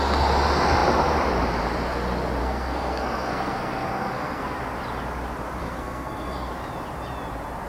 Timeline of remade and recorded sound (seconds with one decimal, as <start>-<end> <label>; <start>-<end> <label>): 0.0-2.4 recorded; 2.4-4.6 remade; 4.6-5.6 recorded; 5.6-6.5 remade; 6.5-7.7 recorded